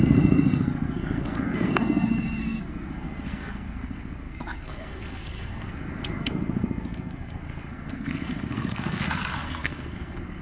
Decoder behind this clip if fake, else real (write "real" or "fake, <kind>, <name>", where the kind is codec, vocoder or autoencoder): fake, codec, SNAC